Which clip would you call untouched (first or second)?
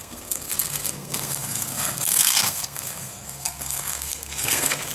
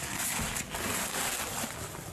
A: second